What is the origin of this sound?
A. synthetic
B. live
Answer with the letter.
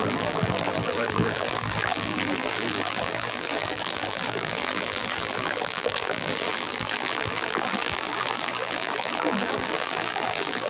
A